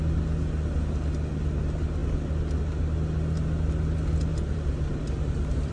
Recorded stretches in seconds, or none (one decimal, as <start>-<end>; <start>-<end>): 0.0-4.3